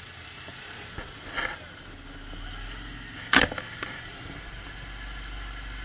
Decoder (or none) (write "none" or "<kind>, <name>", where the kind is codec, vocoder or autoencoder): none